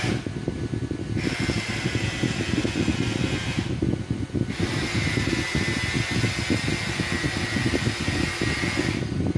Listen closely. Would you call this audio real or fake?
real